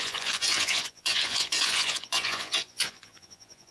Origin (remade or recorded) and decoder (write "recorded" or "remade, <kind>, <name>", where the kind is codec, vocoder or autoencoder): remade, vocoder, Vocos